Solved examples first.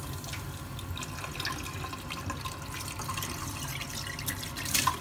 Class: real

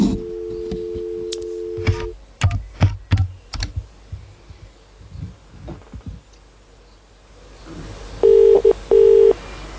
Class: real